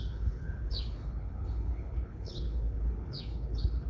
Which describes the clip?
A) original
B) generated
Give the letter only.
B